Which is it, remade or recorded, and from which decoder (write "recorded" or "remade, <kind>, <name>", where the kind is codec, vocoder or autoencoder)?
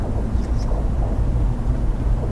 remade, vocoder, BigVGAN v2